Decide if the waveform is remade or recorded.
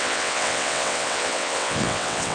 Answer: remade